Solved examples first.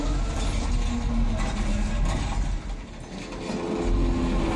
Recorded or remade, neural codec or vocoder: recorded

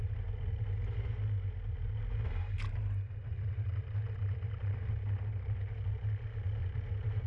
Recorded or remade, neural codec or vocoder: recorded